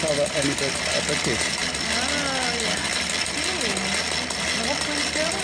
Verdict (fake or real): real